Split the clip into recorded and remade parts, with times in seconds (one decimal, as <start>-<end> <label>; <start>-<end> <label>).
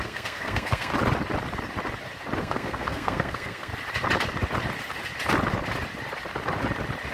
0.0-0.9 remade; 0.9-2.4 recorded; 2.4-3.7 remade; 3.7-7.1 recorded